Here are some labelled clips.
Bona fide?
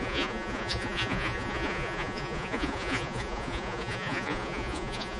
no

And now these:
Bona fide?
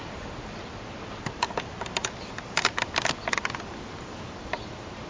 yes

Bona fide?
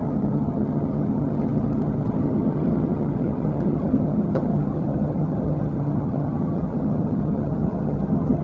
no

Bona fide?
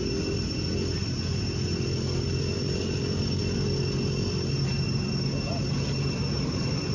yes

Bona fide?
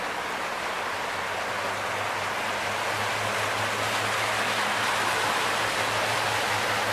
yes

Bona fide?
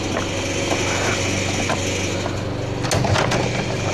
yes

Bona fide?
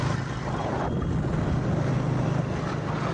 yes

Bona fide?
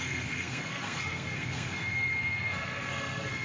no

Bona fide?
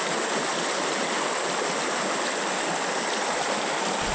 yes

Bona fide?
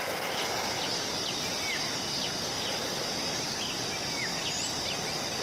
yes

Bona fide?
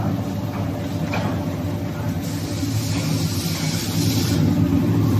yes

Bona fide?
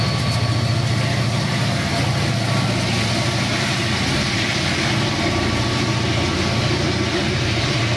yes